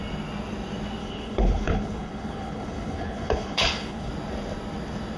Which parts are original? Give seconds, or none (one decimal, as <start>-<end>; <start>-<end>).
0.0-1.0; 4.1-5.2